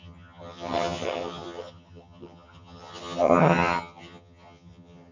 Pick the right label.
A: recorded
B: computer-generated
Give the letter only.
B